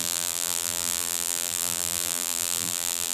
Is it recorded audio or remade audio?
remade